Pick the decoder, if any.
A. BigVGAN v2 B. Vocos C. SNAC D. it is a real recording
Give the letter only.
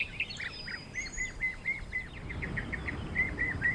D